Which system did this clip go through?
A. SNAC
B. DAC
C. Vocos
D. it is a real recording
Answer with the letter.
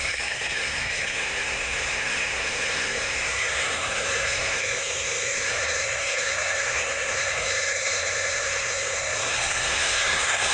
A